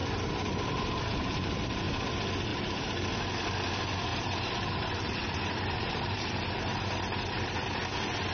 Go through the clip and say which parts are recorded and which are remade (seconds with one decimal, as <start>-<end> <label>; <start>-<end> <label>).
0.0-1.9 remade; 1.9-2.5 recorded; 2.5-3.1 remade; 3.1-4.1 recorded; 4.1-6.9 remade; 6.9-8.3 recorded